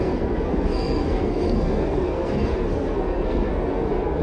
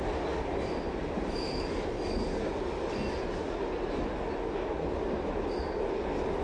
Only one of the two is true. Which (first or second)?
second